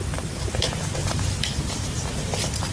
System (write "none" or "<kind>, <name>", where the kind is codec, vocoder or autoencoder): none